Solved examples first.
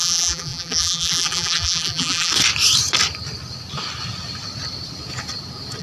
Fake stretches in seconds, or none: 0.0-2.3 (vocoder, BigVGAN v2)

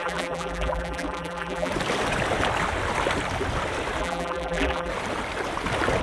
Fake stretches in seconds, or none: 0.0-1.7 (vocoder, BigVGAN v2); 4.0-4.9

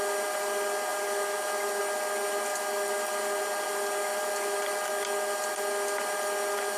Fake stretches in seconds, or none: none

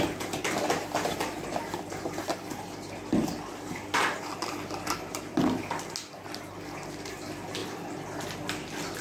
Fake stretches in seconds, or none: none

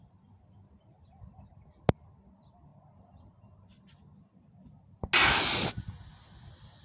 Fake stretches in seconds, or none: none

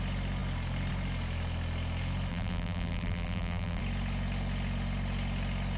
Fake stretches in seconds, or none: 2.3-3.8 (vocoder, BigVGAN v2)

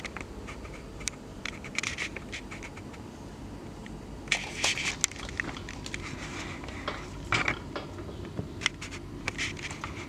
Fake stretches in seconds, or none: 0.0-3.8 (vocoder, BigVGAN v2); 8.0-10.1